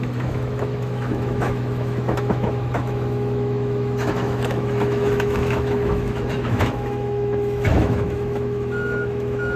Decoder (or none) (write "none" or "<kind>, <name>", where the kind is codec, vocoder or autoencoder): autoencoder, DAC-VAE